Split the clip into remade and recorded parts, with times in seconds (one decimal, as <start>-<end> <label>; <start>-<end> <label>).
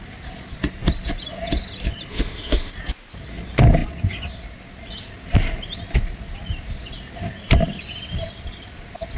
0.0-2.1 recorded; 2.1-2.7 remade; 2.7-9.2 recorded